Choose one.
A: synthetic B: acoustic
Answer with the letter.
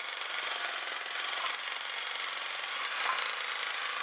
B